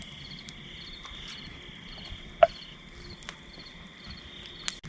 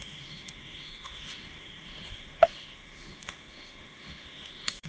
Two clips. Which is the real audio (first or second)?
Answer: first